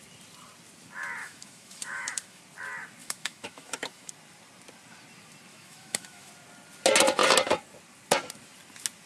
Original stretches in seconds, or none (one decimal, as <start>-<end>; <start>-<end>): 0.0-1.2; 2.4-3.0; 4.1-5.5; 6.3-9.1